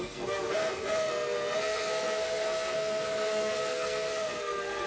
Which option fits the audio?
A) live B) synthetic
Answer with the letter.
B